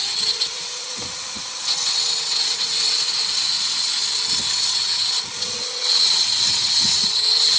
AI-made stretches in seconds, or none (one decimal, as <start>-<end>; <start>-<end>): 0.0-3.9; 4.5-7.6

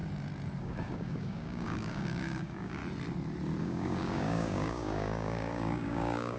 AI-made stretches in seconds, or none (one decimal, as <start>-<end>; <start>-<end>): 0.6-2.8; 3.6-6.4

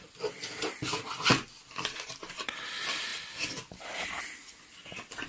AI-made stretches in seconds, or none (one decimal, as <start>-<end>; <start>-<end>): none

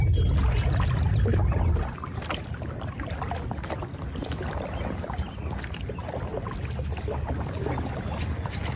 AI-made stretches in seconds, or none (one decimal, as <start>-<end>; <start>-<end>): none

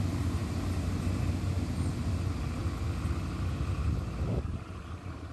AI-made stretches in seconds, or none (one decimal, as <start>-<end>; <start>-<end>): none

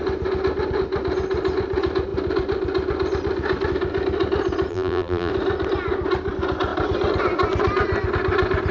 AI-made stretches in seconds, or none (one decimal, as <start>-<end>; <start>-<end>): 4.7-5.3